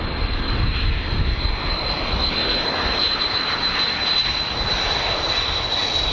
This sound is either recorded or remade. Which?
recorded